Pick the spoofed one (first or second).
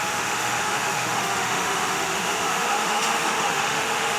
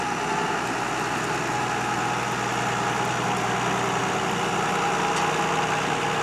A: first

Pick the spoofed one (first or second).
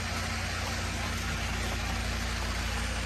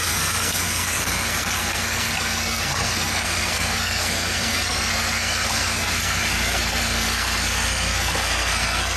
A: second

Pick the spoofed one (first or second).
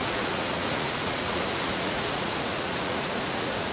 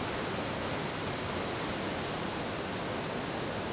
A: first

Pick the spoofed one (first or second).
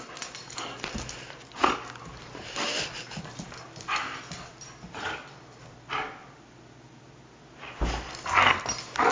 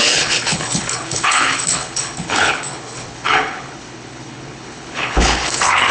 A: second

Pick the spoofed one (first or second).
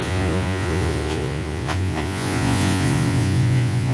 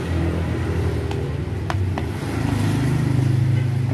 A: first